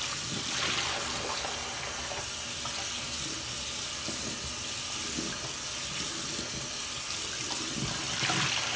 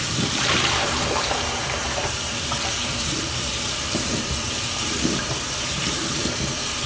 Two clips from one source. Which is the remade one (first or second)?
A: second